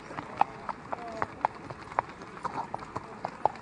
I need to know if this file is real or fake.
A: real